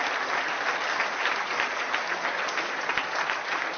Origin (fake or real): real